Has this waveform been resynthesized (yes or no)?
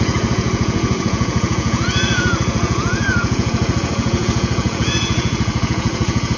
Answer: yes